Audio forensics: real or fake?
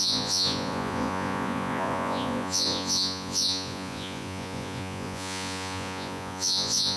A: fake